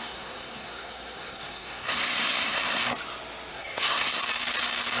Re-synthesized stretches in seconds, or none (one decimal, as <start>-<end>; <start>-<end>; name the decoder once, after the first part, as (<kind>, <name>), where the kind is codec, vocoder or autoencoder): 0.0-2.8 (codec, SNAC); 3.5-4.2